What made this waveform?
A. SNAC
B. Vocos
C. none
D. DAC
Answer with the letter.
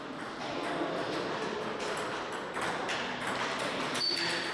C